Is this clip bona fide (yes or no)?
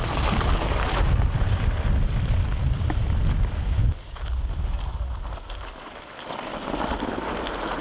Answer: yes